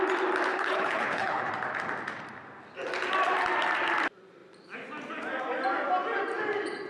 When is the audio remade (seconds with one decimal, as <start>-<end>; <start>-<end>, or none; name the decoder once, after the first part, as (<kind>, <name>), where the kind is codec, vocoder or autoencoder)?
0.5-1.5 (codec, HILCodec)